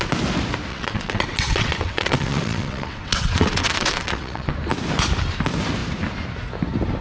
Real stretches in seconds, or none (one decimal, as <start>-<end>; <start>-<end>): 0.0-0.7; 4.5-7.0

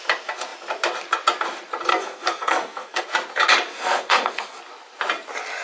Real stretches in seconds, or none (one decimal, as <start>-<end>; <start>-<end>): 0.0-1.9; 3.0-3.7; 4.6-5.6

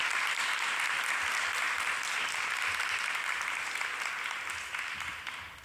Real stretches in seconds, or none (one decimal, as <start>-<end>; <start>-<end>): 0.0-5.6

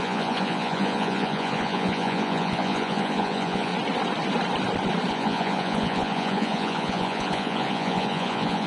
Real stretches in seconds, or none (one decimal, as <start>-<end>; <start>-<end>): 3.7-5.1

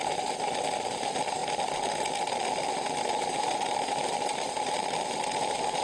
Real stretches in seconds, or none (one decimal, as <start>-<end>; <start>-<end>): 0.0-5.8

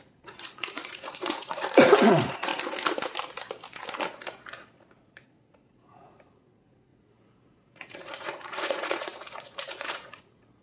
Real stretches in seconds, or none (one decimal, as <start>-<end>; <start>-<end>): 2.5-4.5